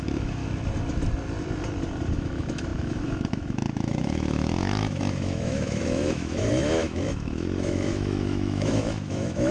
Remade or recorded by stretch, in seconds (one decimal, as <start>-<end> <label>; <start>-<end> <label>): 0.0-0.4 remade; 0.4-2.1 recorded; 2.1-9.5 remade